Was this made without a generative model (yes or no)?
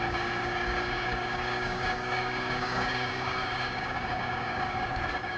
no